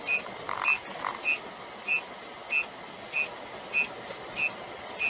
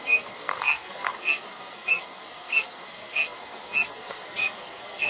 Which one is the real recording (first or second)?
first